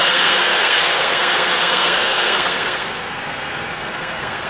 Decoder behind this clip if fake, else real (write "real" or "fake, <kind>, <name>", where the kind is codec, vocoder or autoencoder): fake, codec, SNAC